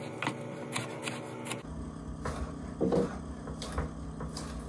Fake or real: real